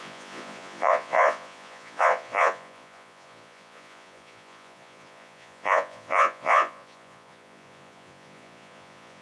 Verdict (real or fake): fake